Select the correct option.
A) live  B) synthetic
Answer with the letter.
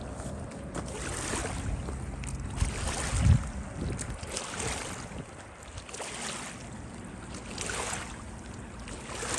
A